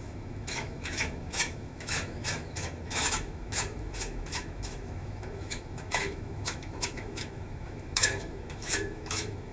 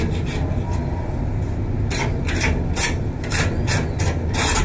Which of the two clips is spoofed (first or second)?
first